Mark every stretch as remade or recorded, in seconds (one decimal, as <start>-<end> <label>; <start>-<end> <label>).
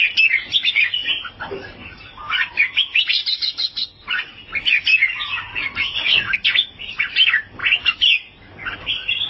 0.0-9.3 recorded